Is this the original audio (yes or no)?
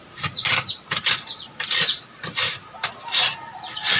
yes